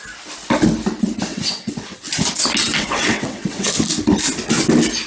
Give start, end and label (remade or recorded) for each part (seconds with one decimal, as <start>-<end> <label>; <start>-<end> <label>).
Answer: 0.0-1.3 recorded; 1.3-2.0 remade; 2.0-2.6 recorded; 2.6-3.7 remade; 3.7-5.1 recorded